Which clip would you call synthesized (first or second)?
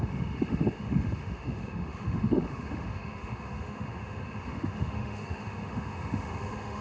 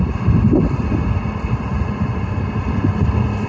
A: first